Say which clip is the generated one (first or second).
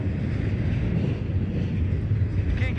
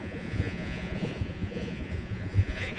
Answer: second